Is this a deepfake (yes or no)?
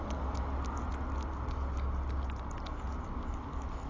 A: no